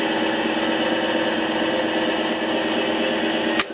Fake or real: real